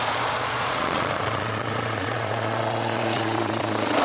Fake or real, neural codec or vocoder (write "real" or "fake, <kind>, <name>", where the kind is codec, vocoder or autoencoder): fake, vocoder, Vocos